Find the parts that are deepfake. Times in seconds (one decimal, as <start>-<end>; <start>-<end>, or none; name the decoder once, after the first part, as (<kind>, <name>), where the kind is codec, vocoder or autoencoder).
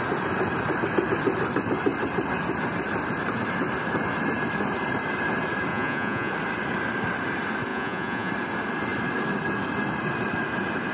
5.7-6.3 (vocoder, Vocos); 7.7-8.3